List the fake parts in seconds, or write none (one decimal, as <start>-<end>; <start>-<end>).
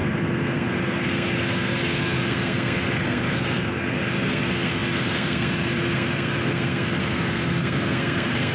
0.0-8.5